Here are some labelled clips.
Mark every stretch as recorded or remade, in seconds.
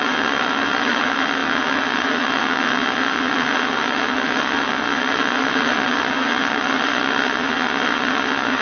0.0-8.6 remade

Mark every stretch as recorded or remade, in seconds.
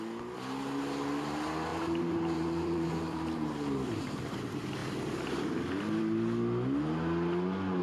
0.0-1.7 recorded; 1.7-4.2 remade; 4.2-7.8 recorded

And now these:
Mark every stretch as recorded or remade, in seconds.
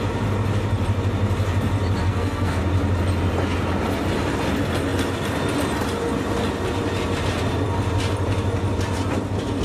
0.0-2.0 recorded; 2.0-2.6 remade; 2.6-9.6 recorded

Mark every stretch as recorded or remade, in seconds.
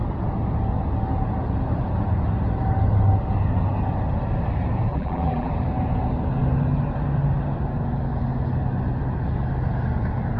0.0-4.9 recorded; 4.9-5.5 remade; 5.5-10.4 recorded